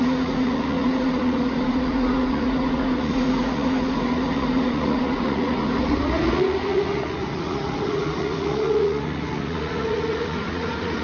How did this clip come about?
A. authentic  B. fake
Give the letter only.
B